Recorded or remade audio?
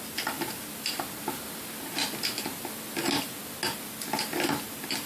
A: recorded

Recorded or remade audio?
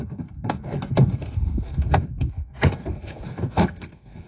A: remade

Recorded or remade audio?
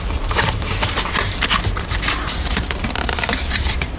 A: remade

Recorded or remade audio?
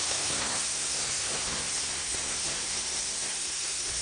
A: remade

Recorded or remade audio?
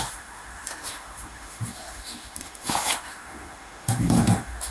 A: remade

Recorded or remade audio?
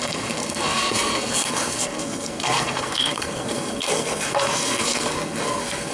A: remade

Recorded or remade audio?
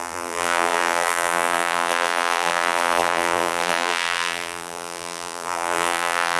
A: remade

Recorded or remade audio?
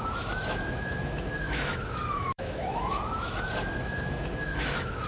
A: remade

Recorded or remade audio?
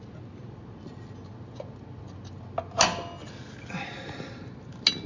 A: recorded